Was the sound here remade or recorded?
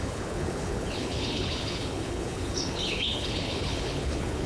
remade